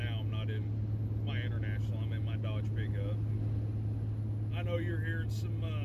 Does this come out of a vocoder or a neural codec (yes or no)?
no